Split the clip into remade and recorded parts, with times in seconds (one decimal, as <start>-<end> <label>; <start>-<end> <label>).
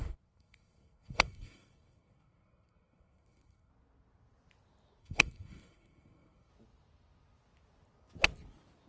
0.0-3.7 remade; 3.7-5.0 recorded; 5.0-6.5 remade; 6.5-8.9 recorded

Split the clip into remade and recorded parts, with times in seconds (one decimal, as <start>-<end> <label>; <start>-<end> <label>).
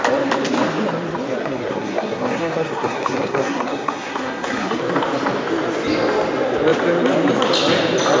0.0-1.4 recorded; 1.4-4.8 remade; 4.8-8.2 recorded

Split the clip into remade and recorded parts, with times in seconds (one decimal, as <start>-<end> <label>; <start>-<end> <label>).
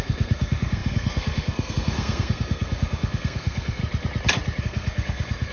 0.0-3.8 remade; 3.8-4.6 recorded; 4.6-5.5 remade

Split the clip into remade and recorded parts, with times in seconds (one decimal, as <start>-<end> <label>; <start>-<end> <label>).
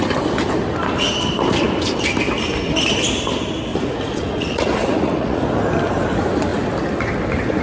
0.0-3.7 recorded; 3.7-5.4 remade; 5.4-7.6 recorded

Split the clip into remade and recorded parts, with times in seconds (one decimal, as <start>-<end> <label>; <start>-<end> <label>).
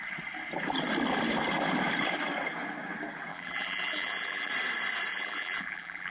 0.0-3.3 recorded; 3.3-4.5 remade; 4.5-5.1 recorded; 5.1-6.1 remade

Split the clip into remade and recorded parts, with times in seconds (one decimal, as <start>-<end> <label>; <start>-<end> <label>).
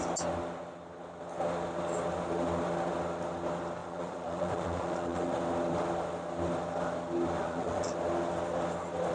0.0-3.8 recorded; 3.8-5.4 remade; 5.4-7.4 recorded; 7.4-7.9 remade; 7.9-9.1 recorded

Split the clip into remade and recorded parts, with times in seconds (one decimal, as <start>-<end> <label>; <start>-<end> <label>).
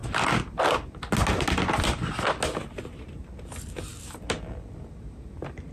0.0-5.7 recorded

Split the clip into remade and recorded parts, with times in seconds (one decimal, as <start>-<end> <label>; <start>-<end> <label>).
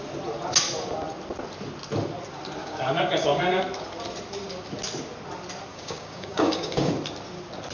0.0-2.6 recorded; 2.6-3.6 remade; 3.6-5.7 recorded; 5.7-6.9 remade; 6.9-7.7 recorded